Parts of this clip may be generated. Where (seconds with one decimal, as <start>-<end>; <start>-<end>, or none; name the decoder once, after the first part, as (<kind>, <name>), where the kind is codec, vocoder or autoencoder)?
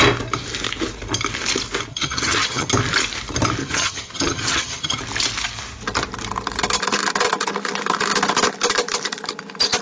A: 1.9-2.7 (vocoder, HiFi-GAN); 3.6-5.0